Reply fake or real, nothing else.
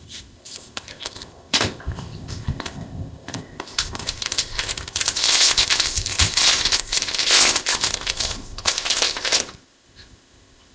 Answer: fake